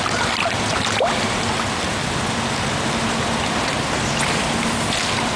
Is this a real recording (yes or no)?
yes